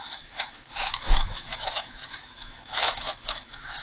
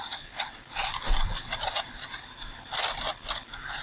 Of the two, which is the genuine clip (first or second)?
second